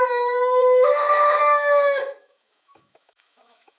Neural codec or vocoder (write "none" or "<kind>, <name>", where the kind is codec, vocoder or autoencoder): autoencoder, DAC-VAE